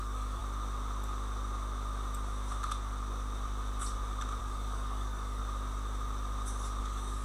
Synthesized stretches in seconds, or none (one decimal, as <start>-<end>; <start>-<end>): 0.0-0.4; 4.4-5.4; 6.8-7.2